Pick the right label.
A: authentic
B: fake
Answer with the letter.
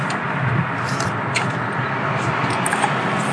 A